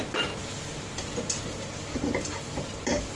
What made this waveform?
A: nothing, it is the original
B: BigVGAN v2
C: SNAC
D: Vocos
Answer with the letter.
A